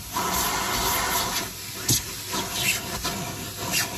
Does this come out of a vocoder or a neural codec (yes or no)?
no